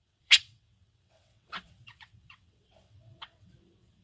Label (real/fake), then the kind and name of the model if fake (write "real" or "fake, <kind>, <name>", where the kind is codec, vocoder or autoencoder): fake, vocoder, WaveNeXt